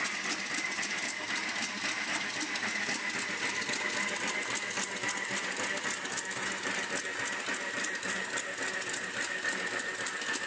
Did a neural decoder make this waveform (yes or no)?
no